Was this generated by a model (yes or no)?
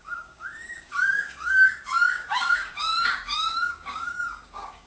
yes